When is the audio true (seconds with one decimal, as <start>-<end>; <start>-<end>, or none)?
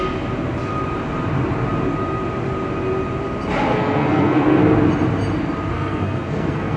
0.0-3.7; 4.6-5.7